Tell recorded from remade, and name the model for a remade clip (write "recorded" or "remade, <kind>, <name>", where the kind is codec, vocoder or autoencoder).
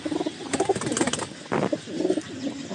recorded